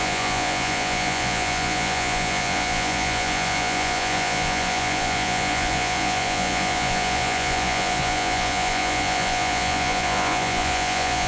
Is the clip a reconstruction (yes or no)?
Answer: yes